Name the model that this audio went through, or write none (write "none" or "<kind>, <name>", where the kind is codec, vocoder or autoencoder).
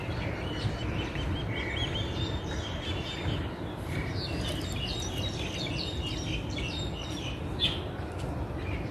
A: none